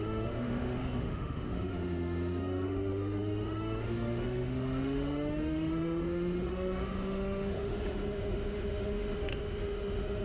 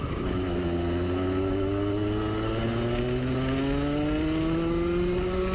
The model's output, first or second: first